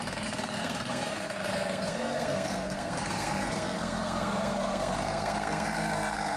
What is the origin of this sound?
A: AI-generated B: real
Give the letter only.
A